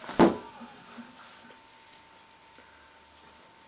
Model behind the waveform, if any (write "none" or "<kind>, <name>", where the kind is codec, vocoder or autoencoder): none